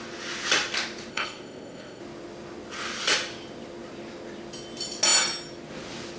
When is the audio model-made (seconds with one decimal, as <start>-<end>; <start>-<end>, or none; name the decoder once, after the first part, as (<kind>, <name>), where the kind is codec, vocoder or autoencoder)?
1.1-2.0 (codec, ZipCodec)